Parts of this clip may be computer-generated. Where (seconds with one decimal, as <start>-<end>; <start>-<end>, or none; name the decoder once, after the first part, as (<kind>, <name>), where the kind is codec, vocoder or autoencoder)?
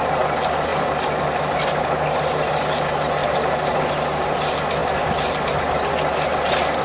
none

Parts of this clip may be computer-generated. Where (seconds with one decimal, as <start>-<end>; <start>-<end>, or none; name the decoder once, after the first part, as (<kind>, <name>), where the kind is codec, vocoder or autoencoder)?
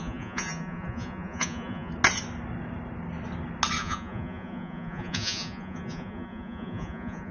0.0-1.9 (vocoder, Vocos); 3.8-7.3